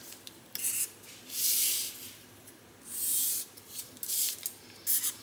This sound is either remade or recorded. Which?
recorded